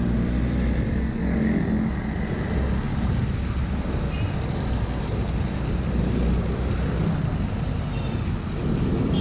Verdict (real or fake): real